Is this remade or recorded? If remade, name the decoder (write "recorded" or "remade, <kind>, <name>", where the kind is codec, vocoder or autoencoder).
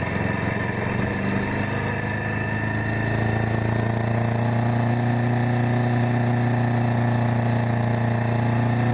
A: recorded